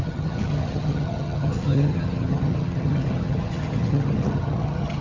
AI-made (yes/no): yes